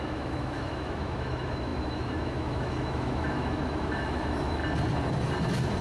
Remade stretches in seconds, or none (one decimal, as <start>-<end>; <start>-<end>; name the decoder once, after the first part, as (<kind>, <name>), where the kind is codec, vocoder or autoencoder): 0.0-4.6 (autoencoder, DAC-VAE)